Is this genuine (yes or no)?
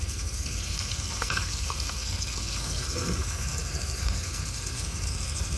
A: no